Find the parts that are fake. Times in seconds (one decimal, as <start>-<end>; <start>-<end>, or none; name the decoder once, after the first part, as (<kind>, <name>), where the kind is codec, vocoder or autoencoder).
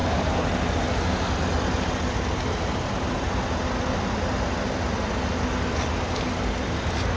none